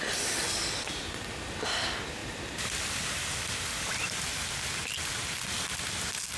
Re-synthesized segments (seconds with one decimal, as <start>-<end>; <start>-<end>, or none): none